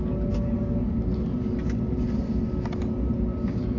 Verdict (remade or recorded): recorded